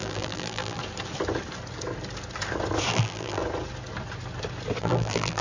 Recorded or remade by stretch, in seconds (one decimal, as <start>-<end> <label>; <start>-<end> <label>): 0.0-0.8 remade; 0.8-2.9 recorded; 2.9-3.4 remade; 3.4-4.8 recorded; 4.8-5.4 remade